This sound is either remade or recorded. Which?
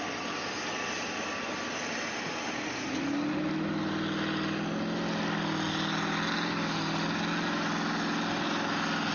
recorded